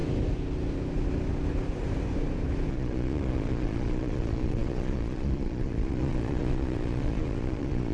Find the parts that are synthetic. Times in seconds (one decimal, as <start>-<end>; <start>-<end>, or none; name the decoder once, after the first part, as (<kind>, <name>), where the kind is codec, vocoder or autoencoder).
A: 2.7-7.9 (vocoder, Vocos)